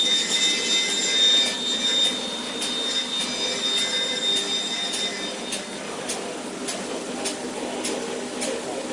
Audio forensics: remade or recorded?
recorded